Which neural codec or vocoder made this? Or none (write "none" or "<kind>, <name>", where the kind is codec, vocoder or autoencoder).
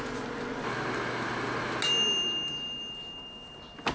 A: none